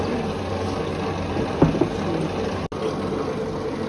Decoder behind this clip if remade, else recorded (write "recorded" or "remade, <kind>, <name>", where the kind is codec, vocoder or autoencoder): recorded